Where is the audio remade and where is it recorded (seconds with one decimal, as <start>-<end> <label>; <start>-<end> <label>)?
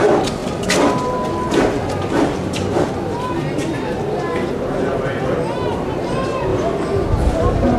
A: 0.0-7.8 recorded